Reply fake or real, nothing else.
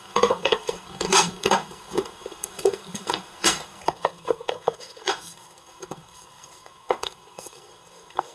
fake